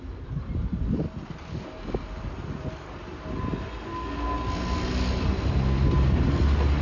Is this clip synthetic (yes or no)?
no